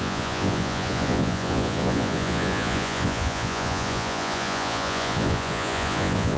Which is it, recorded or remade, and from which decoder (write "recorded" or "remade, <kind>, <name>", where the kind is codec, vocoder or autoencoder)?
remade, vocoder, Vocos